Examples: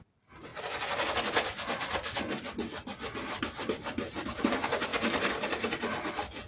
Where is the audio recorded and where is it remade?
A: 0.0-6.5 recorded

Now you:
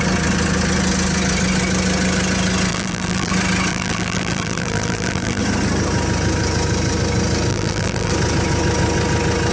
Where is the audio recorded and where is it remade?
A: 0.0-2.7 recorded; 2.7-3.3 remade; 3.3-3.7 recorded; 3.7-5.4 remade; 5.4-7.5 recorded; 7.5-8.1 remade; 8.1-9.5 recorded

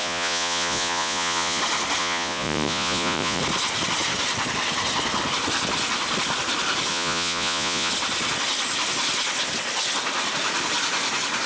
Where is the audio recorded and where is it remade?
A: 0.0-1.6 remade; 1.6-2.0 recorded; 2.0-3.4 remade; 3.4-6.9 recorded; 6.9-7.9 remade; 7.9-11.5 recorded

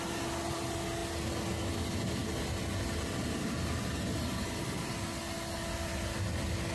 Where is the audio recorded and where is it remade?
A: 0.0-6.7 recorded

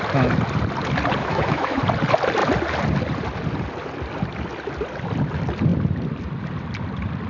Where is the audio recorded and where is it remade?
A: 0.0-1.2 recorded; 1.2-1.8 remade; 1.8-7.3 recorded

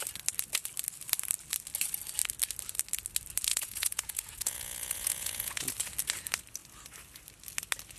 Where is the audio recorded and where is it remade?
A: 0.0-3.5 recorded; 3.5-5.7 remade; 5.7-8.0 recorded

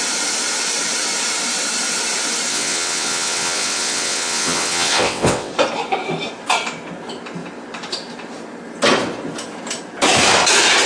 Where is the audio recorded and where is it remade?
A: 0.0-2.5 recorded; 2.5-5.5 remade; 5.5-10.9 recorded

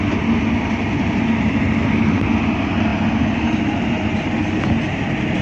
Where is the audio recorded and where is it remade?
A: 0.0-5.4 recorded